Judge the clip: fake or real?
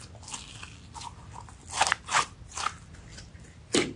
real